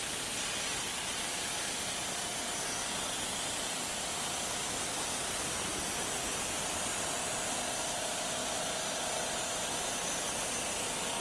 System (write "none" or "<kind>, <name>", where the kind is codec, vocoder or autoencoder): none